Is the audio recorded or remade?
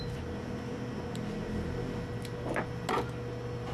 recorded